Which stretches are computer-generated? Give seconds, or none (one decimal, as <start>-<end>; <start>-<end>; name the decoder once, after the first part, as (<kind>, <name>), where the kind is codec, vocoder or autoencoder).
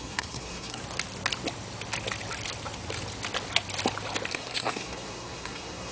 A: 0.0-0.8 (codec, SNAC); 4.3-5.9